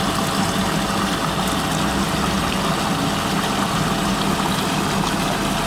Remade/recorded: recorded